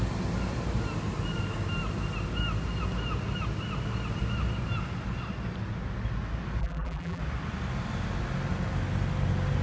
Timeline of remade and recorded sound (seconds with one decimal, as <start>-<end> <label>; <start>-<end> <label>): 0.0-6.6 recorded; 6.6-7.2 remade; 7.2-9.6 recorded